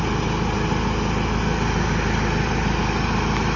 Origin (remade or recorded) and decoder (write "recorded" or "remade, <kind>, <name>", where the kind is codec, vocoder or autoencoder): recorded